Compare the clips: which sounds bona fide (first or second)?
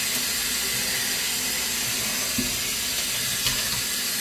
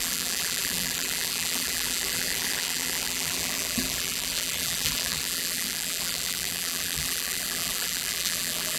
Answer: first